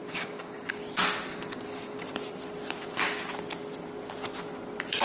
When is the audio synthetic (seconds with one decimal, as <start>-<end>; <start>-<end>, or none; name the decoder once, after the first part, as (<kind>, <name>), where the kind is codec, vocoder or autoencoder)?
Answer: 0.0-0.7 (codec, DAC); 1.3-2.0

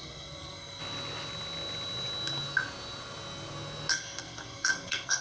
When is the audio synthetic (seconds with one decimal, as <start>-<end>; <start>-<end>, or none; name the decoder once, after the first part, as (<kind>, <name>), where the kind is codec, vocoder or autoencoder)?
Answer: 0.0-0.8 (codec, SNAC); 3.9-5.2

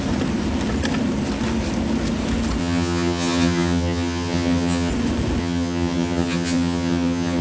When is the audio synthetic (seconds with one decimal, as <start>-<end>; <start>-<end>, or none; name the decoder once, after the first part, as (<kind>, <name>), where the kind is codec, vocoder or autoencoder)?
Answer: 2.6-4.9 (vocoder, HiFi-GAN); 5.4-7.4